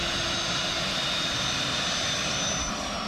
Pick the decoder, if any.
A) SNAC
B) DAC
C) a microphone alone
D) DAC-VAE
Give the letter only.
C